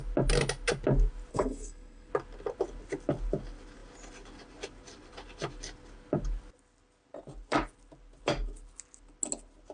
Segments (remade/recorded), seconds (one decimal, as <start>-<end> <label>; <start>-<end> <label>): 0.0-1.3 recorded; 1.3-2.1 remade; 2.1-9.7 recorded